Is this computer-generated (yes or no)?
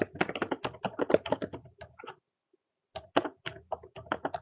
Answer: no